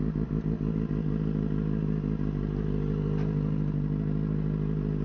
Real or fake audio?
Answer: real